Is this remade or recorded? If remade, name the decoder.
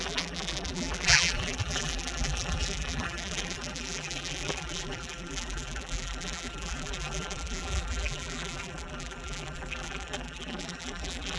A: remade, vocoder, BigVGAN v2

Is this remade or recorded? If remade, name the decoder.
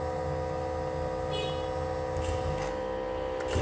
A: recorded